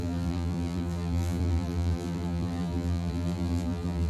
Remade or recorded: remade